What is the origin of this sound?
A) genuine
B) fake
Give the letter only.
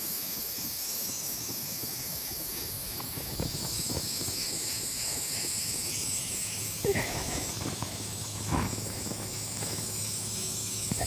B